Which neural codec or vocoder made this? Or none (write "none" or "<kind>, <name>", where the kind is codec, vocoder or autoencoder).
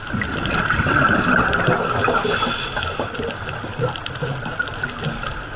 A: none